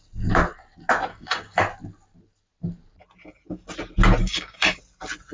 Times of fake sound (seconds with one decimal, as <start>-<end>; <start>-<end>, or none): 1.1-1.6; 4.2-4.8